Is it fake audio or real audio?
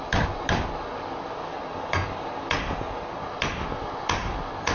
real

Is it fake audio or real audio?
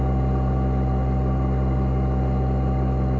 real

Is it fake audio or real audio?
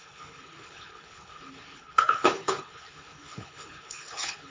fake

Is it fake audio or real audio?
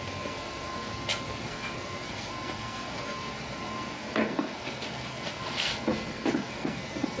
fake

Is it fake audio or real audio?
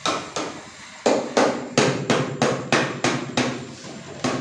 real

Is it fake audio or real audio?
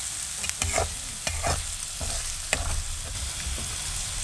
real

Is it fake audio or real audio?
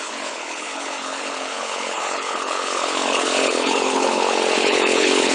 fake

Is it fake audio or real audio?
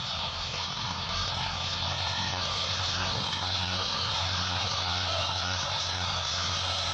fake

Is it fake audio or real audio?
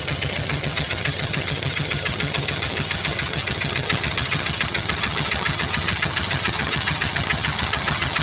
fake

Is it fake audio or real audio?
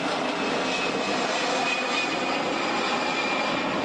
real